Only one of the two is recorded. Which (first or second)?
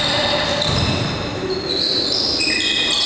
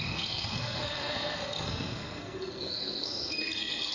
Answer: first